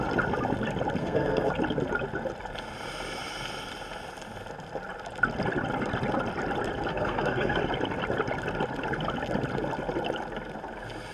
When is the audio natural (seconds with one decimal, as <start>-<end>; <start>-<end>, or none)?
0.0-1.0; 1.5-6.9; 7.6-11.1